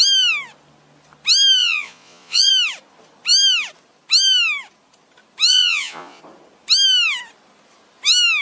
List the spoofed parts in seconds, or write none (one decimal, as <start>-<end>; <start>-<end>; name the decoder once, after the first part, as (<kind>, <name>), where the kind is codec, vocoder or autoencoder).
1.6-2.5 (vocoder, Vocos); 5.5-6.2